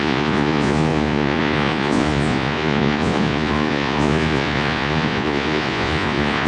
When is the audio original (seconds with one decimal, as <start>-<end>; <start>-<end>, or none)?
none